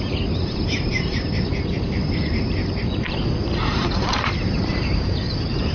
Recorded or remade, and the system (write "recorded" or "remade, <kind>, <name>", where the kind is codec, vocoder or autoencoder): remade, vocoder, BigVGAN v2